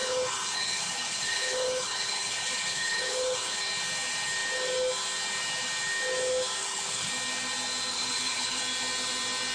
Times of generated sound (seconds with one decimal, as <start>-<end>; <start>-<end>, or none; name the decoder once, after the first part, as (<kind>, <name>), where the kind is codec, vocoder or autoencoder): 0.0-3.6 (codec, HILCodec); 6.6-7.1; 7.9-8.6